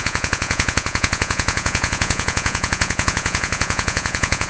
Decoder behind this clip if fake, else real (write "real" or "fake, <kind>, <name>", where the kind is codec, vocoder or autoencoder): fake, vocoder, Vocos